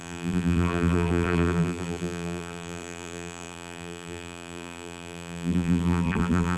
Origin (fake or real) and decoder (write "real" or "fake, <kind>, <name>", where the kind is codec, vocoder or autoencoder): fake, vocoder, BigVGAN v2